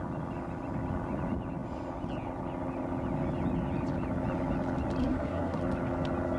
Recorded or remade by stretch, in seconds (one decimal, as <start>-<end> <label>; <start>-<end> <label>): 0.0-5.0 recorded; 5.0-5.6 remade; 5.6-6.4 recorded